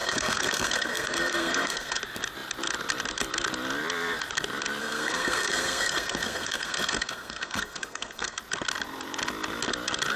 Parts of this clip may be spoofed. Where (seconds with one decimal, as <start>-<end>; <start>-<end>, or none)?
0.0-2.0; 4.8-8.4